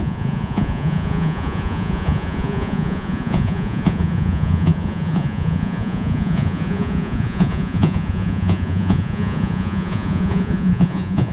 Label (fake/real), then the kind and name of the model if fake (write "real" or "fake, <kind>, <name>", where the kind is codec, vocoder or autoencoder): fake, vocoder, Vocos